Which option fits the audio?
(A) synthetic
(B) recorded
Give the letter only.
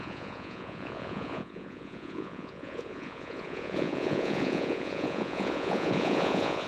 A